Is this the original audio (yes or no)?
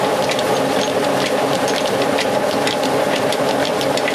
yes